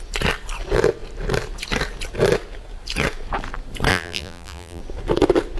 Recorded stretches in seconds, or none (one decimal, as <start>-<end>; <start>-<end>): 0.0-3.9; 4.8-5.6